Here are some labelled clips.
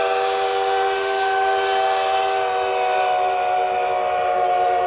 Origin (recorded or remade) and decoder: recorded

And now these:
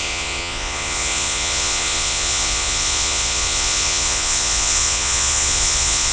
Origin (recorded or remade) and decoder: remade, vocoder, Vocos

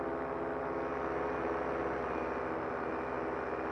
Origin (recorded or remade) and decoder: recorded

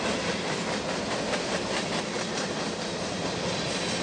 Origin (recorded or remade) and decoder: recorded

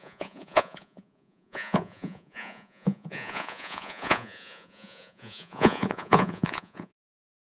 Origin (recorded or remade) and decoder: remade, vocoder, Vocos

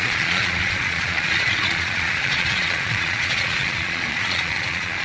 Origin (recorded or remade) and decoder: remade, vocoder, Vocos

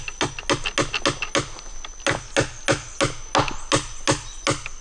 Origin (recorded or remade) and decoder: recorded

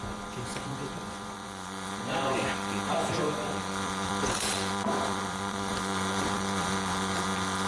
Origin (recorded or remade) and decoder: remade, vocoder, Vocos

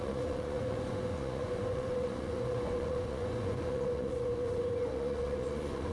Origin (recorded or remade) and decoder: remade, vocoder, Vocos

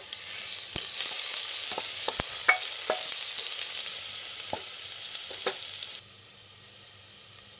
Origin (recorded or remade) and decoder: recorded